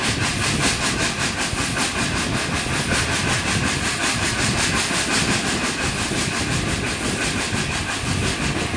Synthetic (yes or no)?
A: no